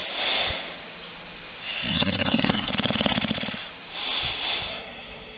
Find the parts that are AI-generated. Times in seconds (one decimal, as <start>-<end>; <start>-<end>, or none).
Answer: 1.9-2.7; 4.7-5.4